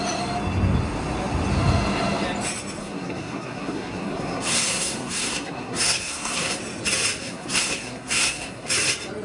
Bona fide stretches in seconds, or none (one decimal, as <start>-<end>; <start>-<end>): 0.0-2.8; 6.6-7.2; 8.7-9.2